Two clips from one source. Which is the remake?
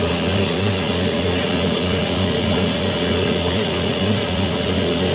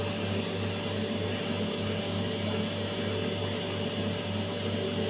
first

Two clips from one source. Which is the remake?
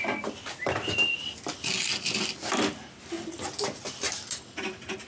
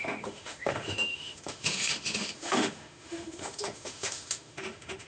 second